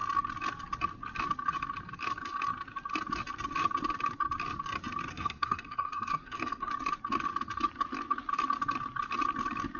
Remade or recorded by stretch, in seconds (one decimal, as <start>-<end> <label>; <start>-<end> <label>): 0.0-5.1 recorded; 5.1-6.7 remade; 6.7-9.8 recorded